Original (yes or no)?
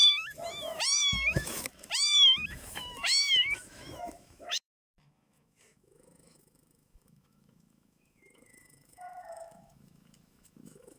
no